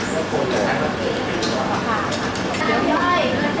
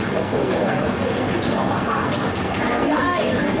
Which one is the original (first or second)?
first